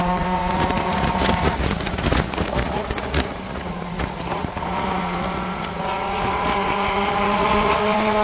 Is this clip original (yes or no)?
no